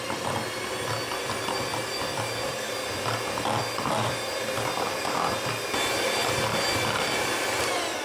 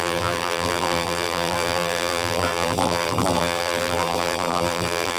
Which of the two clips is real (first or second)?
first